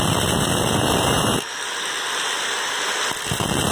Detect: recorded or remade recorded